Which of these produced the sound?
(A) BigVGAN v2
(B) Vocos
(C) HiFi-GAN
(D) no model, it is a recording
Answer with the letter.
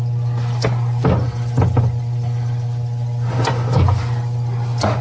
D